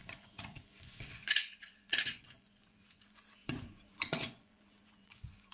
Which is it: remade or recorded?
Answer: remade